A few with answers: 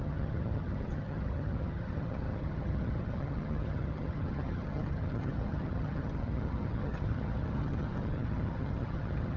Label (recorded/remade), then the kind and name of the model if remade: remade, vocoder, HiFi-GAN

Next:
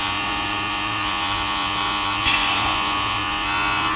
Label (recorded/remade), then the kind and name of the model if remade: remade, vocoder, Vocos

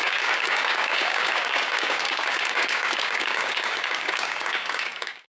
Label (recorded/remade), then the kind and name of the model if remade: remade, codec, DAC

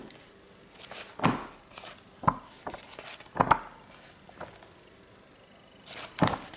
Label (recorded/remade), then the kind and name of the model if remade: recorded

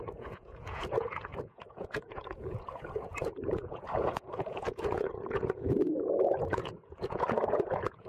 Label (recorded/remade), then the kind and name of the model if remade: remade, vocoder, Vocos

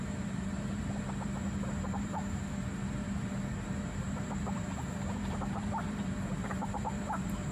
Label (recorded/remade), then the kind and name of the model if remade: remade, vocoder, BigVGAN v2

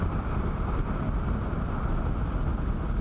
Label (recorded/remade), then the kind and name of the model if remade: recorded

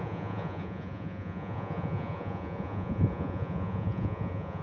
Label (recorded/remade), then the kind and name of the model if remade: remade, vocoder, Vocos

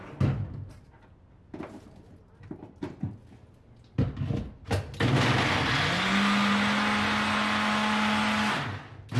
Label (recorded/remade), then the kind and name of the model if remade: recorded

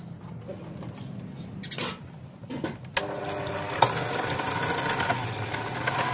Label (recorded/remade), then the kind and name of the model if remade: recorded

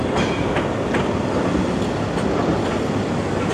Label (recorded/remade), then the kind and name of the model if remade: recorded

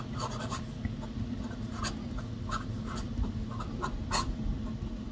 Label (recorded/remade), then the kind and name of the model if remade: recorded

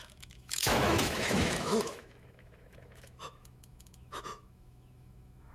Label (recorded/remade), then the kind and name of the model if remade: remade, autoencoder, DAC-VAE